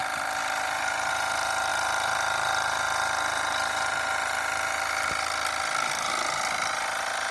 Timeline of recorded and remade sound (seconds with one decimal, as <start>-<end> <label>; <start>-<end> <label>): 0.0-0.4 recorded; 0.4-1.1 remade; 1.1-7.3 recorded